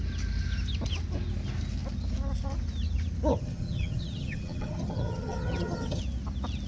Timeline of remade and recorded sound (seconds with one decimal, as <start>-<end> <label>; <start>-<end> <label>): 0.0-3.3 recorded; 3.3-6.0 remade; 6.0-6.7 recorded